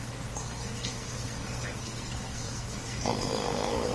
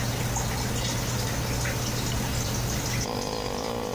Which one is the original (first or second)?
second